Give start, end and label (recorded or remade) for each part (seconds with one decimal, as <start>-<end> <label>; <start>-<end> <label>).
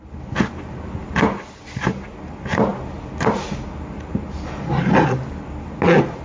0.0-6.2 recorded